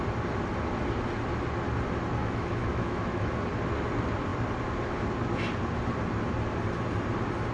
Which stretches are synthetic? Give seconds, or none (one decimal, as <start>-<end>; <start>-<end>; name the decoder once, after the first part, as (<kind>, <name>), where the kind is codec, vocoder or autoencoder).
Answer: 2.2-3.3 (autoencoder, DAC-VAE)